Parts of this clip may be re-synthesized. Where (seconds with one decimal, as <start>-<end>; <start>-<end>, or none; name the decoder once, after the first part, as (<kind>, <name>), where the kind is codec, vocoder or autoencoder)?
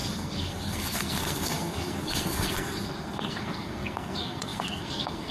0.0-5.3 (codec, SNAC)